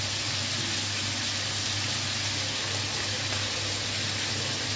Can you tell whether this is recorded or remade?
recorded